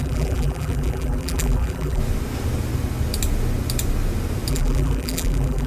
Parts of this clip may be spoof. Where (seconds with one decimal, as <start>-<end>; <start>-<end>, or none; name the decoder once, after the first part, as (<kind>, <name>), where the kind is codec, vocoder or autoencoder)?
0.0-2.0 (vocoder, BigVGAN v2); 4.5-5.7